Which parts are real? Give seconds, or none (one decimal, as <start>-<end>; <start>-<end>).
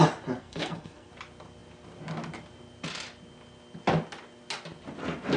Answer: 0.0-0.4; 1.1-5.4